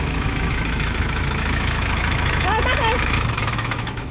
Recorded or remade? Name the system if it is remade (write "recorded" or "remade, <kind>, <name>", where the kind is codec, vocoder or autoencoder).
remade, autoencoder, DAC-VAE